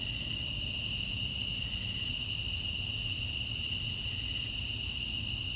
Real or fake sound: real